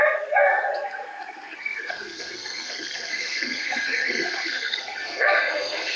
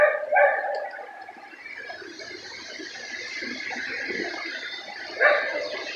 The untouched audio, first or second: second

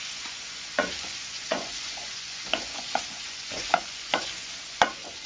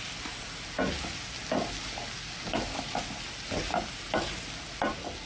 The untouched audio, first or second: second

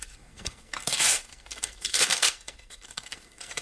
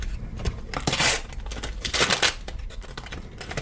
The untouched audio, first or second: second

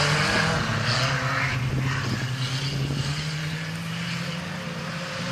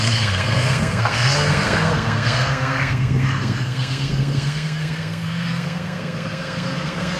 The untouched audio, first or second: first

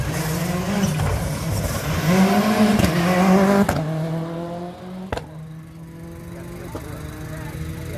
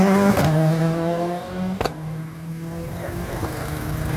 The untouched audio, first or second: first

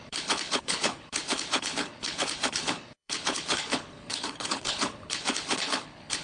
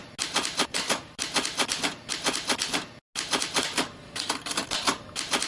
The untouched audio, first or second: second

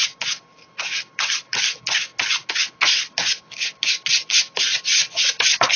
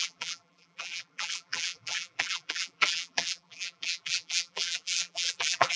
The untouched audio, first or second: first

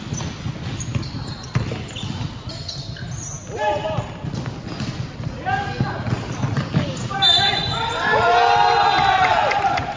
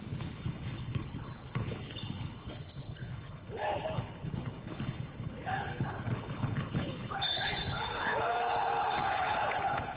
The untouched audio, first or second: first